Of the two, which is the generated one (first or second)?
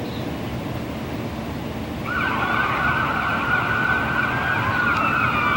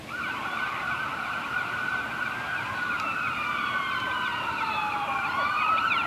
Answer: second